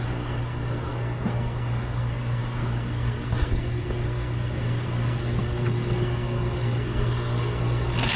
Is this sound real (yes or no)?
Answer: no